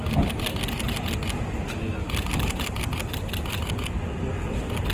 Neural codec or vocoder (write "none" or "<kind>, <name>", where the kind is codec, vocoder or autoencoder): none